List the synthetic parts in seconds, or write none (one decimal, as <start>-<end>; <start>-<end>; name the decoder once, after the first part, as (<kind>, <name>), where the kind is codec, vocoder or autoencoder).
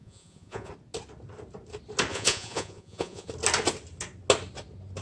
0.0-0.7 (vocoder, Vocos); 2.1-3.3